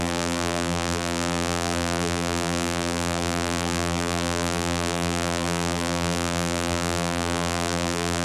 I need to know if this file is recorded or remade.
remade